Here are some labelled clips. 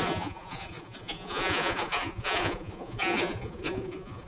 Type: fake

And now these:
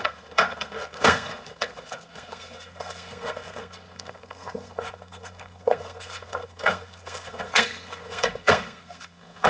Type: fake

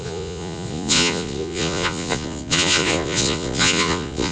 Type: fake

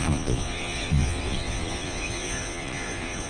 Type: fake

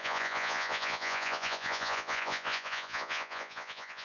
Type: fake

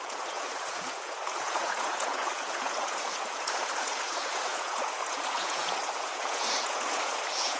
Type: fake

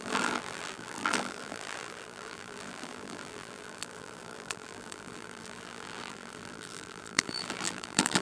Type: fake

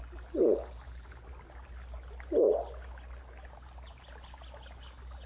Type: real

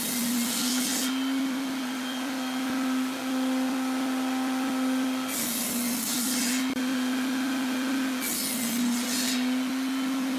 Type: real